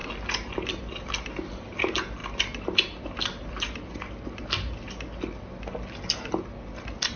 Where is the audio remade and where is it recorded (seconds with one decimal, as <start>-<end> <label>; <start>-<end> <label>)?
0.0-7.2 recorded

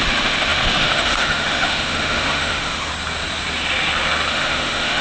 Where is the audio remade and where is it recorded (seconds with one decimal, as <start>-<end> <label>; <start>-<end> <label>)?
0.0-2.9 remade; 2.9-4.3 recorded; 4.3-5.0 remade

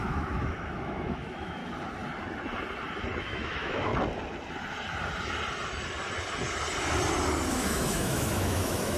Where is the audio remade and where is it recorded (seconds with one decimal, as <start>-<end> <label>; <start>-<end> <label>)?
0.0-1.6 remade; 1.6-3.2 recorded; 3.2-3.9 remade; 3.9-7.5 recorded; 7.5-9.0 remade

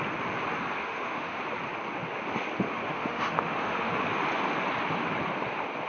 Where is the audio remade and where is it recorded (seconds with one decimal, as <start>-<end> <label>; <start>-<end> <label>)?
0.0-0.8 recorded; 0.8-1.4 remade; 1.4-2.8 recorded; 2.8-3.9 remade; 3.9-5.9 recorded

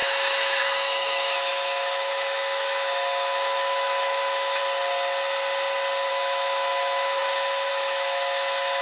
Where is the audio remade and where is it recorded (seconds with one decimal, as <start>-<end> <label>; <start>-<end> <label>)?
0.0-4.6 remade; 4.6-6.1 recorded; 6.1-8.8 remade

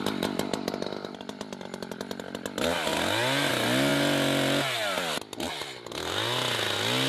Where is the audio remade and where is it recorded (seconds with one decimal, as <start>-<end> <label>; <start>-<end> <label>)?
0.0-7.1 recorded

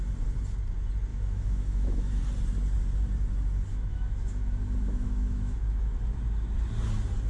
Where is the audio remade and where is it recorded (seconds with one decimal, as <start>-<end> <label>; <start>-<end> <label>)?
0.0-1.1 recorded; 1.1-2.2 remade; 2.2-3.7 recorded; 3.7-6.0 remade; 6.0-7.3 recorded